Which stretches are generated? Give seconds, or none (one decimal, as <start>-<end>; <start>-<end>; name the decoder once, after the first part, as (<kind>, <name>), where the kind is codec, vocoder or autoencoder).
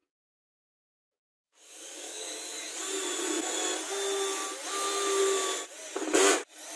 0.0-2.7 (codec, DAC)